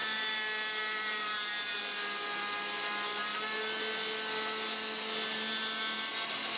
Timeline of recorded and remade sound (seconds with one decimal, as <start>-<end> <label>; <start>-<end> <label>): 0.0-1.8 remade; 1.8-6.6 recorded

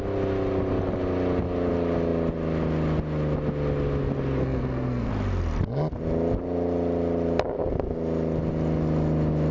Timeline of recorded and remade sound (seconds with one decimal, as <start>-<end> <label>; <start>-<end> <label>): 0.0-4.4 recorded; 4.4-5.1 remade; 5.1-9.5 recorded

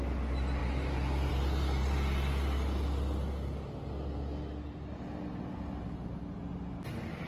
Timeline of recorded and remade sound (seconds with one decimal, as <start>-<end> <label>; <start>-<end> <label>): 0.0-7.3 recorded

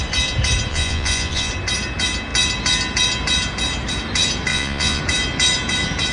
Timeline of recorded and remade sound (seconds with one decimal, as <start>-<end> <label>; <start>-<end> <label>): 0.0-0.7 recorded; 0.7-1.5 remade; 1.5-4.5 recorded; 4.5-5.0 remade; 5.0-6.1 recorded

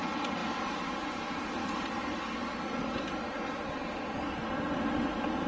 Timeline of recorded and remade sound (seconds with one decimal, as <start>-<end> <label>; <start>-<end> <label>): 0.0-5.5 recorded

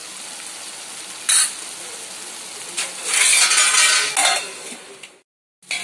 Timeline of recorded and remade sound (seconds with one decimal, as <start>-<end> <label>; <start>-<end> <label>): 0.0-4.2 recorded; 4.2-5.1 remade; 5.1-5.8 recorded

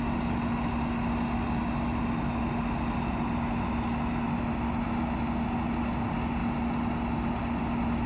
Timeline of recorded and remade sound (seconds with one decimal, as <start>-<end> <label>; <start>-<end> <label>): 0.0-8.1 recorded

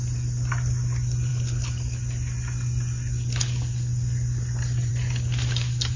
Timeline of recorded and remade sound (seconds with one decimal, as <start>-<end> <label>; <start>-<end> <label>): 0.0-6.0 recorded